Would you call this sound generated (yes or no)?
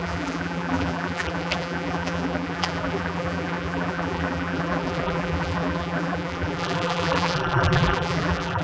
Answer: yes